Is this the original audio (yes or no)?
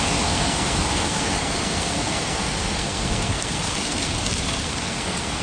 no